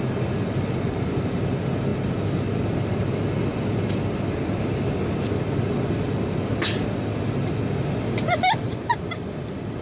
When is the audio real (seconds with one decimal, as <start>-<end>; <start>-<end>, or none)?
0.0-9.8

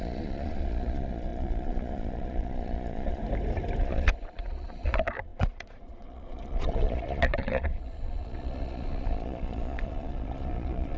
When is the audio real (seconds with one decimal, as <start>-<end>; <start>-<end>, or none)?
3.2-3.8